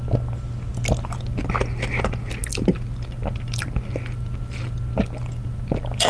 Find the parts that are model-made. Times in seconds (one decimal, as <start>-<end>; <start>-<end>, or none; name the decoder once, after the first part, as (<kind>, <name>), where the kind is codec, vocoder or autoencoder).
none